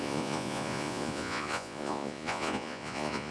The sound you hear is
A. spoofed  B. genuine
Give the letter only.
A